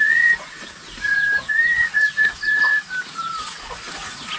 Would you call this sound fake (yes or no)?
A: yes